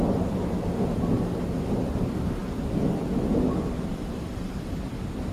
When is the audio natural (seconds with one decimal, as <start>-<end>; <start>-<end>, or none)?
0.0-3.9; 4.8-5.3